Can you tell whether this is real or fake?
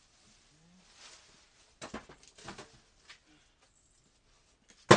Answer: real